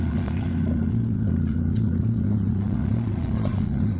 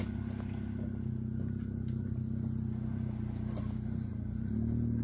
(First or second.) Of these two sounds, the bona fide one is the second